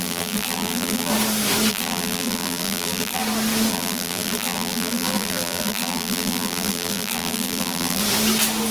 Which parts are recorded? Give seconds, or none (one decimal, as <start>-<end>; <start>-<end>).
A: 1.1-1.7; 3.2-3.7; 8.0-8.7

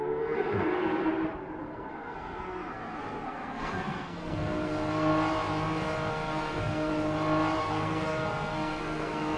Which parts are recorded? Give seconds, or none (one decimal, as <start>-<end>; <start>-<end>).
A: 1.1-1.6; 5.1-6.1; 6.9-7.6

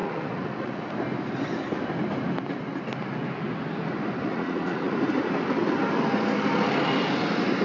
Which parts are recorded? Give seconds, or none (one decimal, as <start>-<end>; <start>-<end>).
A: 0.8-4.2; 5.0-7.6